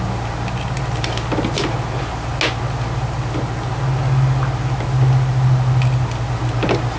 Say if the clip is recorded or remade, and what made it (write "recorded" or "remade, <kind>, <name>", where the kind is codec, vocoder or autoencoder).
recorded